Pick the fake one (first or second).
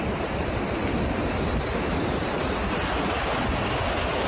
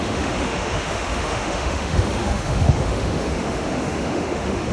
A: second